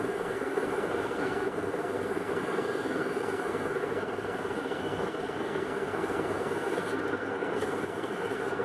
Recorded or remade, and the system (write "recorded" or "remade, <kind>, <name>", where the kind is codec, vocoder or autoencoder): remade, codec, SNAC